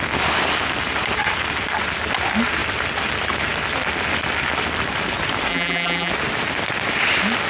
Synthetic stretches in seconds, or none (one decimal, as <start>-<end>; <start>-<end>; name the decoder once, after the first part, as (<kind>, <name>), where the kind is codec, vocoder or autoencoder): 5.5-6.1 (vocoder, BigVGAN v2)